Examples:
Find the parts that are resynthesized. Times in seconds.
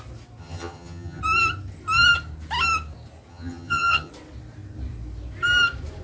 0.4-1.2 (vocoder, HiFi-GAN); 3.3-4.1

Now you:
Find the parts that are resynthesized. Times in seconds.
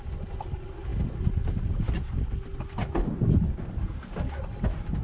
none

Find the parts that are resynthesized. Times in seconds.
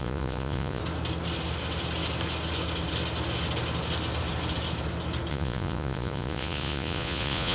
0.0-0.8 (vocoder, Vocos); 5.3-7.5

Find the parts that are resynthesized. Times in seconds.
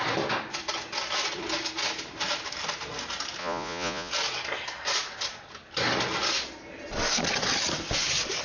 3.4-4.1 (vocoder, Vocos)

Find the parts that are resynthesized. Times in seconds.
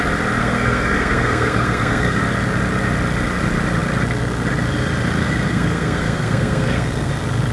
0.4-2.2 (codec, SNAC); 5.2-7.1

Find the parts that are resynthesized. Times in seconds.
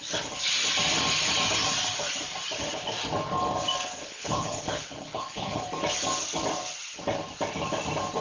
4.0-5.6 (codec, HILCodec)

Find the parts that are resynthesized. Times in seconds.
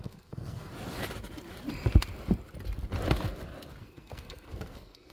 0.0-0.7 (codec, SNAC); 3.8-5.1